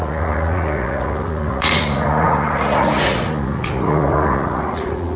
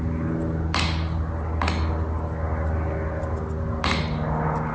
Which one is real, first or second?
second